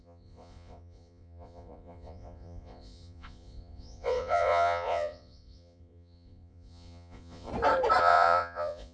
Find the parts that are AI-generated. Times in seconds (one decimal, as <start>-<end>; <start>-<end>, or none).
0.0-7.5; 8.0-8.9